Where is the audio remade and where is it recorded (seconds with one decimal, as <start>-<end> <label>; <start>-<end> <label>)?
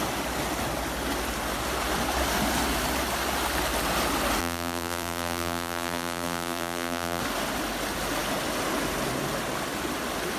0.0-4.4 recorded; 4.4-7.2 remade; 7.2-10.4 recorded